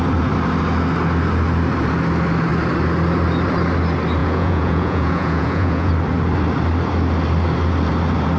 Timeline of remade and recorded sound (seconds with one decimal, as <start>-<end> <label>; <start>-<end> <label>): 0.0-4.2 recorded; 4.2-5.9 remade; 5.9-8.4 recorded